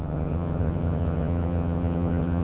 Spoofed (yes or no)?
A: yes